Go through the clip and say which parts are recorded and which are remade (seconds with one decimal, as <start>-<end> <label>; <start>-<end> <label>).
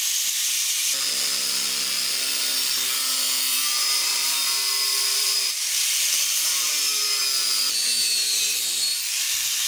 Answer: 0.0-4.1 recorded; 4.1-6.7 remade; 6.7-9.7 recorded